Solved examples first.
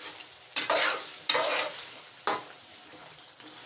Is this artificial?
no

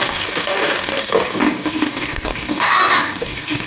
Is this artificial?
yes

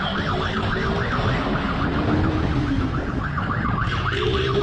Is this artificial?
no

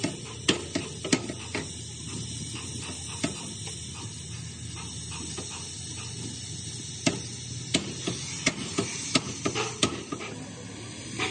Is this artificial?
no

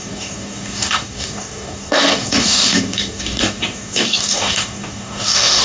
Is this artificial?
yes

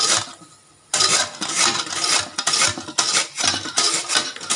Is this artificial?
no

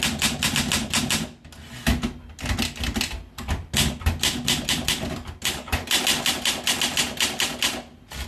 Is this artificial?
no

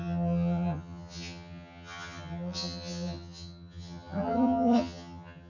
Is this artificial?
yes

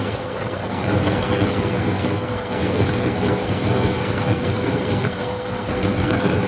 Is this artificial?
yes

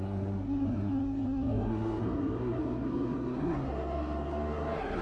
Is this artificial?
yes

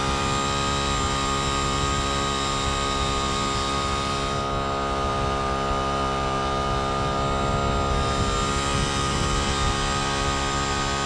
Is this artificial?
no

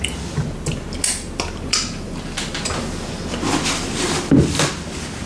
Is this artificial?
no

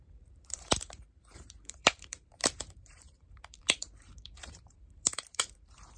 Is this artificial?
yes